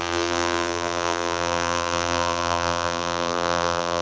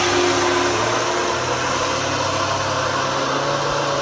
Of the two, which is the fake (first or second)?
first